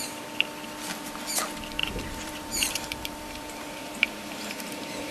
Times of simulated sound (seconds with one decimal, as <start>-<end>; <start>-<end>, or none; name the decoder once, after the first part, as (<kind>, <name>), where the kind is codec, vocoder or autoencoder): 1.8-5.1 (vocoder, BigVGAN v2)